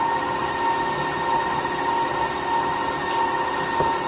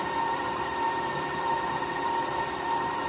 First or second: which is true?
first